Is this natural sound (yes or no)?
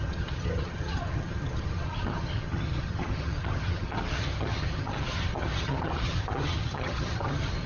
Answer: no